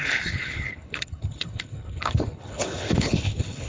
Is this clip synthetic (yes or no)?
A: yes